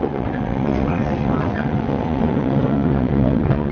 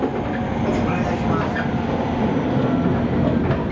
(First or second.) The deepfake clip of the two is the first